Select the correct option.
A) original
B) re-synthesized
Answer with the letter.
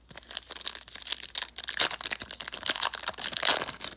A